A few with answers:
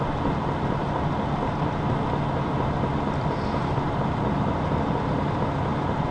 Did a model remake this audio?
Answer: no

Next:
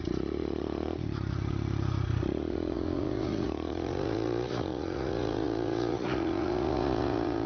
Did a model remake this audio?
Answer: yes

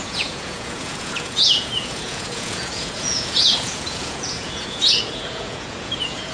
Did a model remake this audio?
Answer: yes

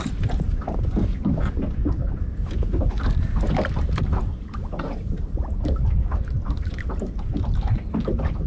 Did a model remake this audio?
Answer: no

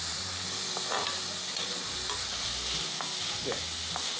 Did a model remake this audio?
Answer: no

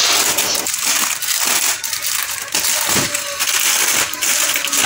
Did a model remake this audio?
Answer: no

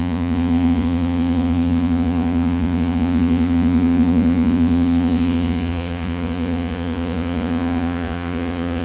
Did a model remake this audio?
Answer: yes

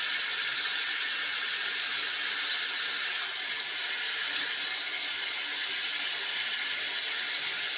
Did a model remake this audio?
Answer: no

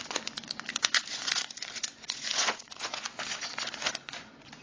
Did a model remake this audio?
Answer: yes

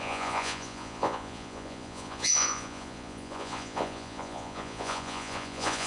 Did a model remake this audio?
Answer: yes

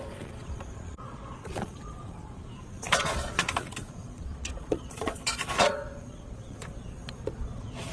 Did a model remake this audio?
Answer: yes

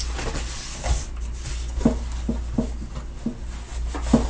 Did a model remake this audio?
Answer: no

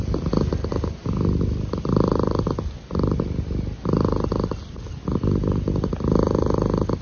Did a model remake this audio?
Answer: no